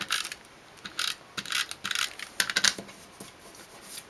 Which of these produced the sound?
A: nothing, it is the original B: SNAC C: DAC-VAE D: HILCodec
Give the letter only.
A